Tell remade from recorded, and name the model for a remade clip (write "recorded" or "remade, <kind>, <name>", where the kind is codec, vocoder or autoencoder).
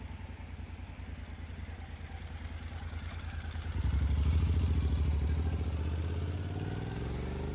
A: recorded